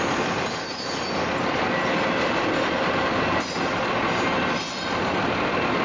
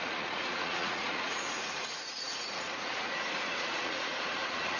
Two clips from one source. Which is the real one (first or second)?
first